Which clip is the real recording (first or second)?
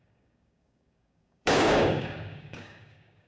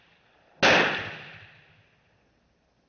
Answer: second